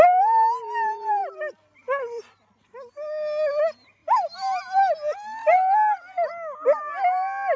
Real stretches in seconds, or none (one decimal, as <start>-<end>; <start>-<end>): 0.0-7.6